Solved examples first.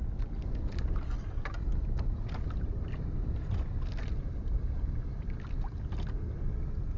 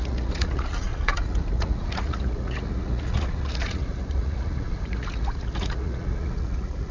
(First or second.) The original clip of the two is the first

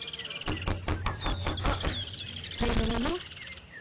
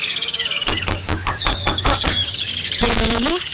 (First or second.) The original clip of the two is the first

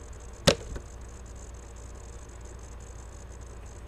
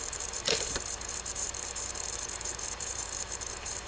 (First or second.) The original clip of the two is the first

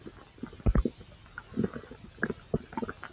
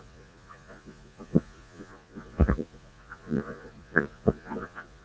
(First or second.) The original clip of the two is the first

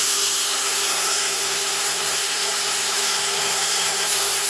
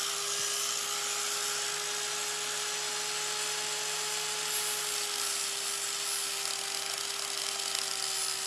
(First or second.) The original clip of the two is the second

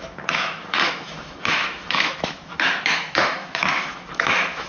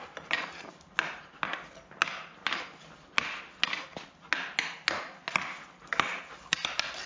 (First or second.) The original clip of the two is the second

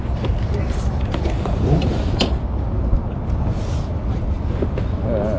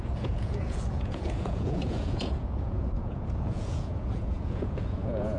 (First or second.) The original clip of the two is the first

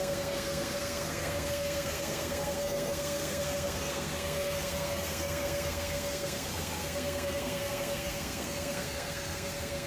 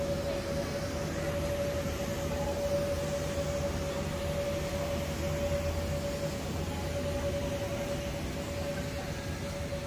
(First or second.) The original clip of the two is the second